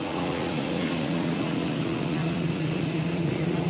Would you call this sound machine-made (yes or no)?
yes